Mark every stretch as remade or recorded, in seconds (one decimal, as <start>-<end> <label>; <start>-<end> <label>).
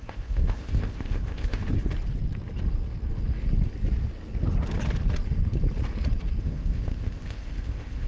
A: 0.0-1.6 remade; 1.6-6.4 recorded; 6.4-8.1 remade